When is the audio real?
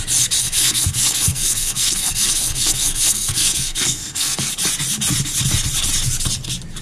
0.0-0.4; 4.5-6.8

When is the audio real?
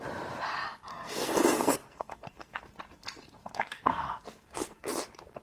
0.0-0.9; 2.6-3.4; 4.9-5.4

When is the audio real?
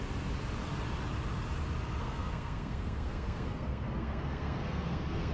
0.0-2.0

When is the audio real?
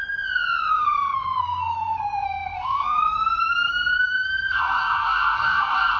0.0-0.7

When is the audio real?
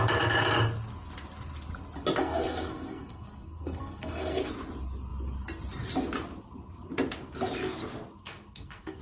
0.0-2.2; 4.5-8.2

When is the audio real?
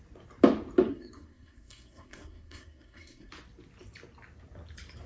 0.0-0.9; 3.3-5.1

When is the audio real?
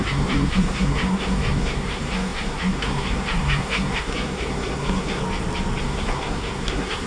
5.2-5.8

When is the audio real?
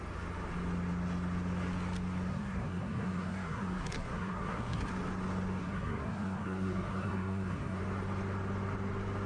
0.0-2.3; 4.9-5.6; 7.8-9.3